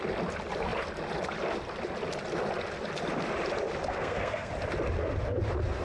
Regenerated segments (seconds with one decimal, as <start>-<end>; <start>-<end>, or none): 3.9-4.5